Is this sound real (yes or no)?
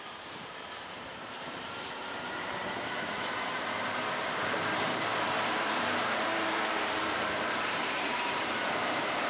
no